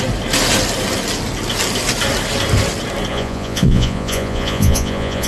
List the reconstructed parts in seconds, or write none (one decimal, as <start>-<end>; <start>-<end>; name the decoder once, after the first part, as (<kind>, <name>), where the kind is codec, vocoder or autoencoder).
3.1-5.3 (vocoder, Vocos)